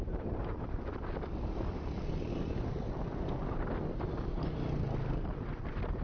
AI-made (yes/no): no